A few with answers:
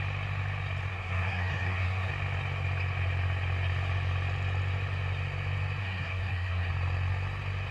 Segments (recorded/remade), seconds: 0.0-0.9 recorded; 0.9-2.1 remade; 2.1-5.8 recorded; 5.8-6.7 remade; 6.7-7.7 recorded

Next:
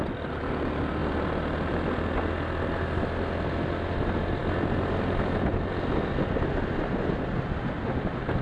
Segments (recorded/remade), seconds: 0.0-8.4 recorded

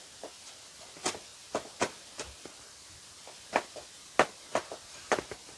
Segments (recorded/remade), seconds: 0.0-5.6 recorded

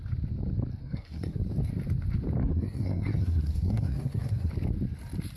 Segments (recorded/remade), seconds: 0.0-0.8 recorded; 0.8-1.4 remade; 1.4-2.4 recorded; 2.4-4.5 remade; 4.5-5.4 recorded

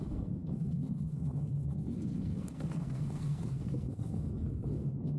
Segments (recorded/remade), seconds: 0.0-5.2 remade

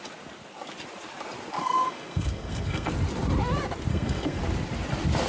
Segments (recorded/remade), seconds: 0.0-1.6 recorded; 1.6-2.9 remade; 2.9-3.9 recorded; 3.9-4.4 remade; 4.4-5.3 recorded